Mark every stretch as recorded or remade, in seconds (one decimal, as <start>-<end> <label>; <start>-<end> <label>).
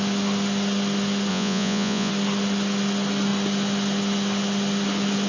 0.0-1.3 recorded; 1.3-2.1 remade; 2.1-5.3 recorded